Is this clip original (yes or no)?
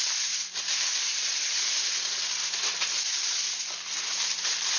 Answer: yes